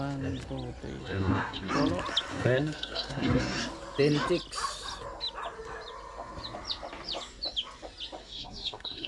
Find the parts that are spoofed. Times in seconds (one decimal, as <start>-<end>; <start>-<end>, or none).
1.0-1.7; 2.3-3.4; 8.2-9.1